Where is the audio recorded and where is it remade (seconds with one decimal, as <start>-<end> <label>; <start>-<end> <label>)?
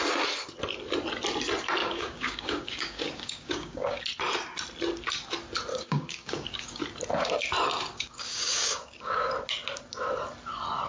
0.0-1.8 recorded; 1.8-4.0 remade; 4.0-5.7 recorded; 5.7-6.8 remade; 6.8-7.9 recorded; 7.9-9.3 remade; 9.3-10.9 recorded